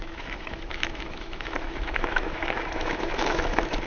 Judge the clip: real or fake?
fake